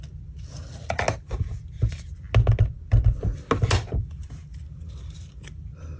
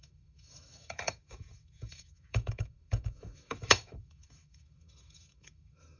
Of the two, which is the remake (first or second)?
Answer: second